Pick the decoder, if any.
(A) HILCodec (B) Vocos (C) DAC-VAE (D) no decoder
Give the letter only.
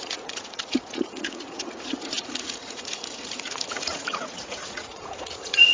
B